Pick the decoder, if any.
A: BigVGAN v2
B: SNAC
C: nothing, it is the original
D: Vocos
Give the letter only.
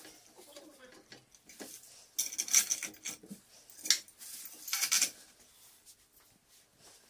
C